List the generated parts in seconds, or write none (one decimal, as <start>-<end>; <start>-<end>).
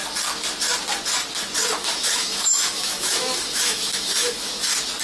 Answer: 1.8-4.5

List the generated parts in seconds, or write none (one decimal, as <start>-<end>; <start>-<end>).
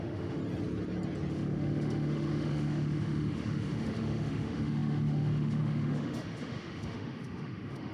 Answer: 0.0-0.4; 1.3-7.9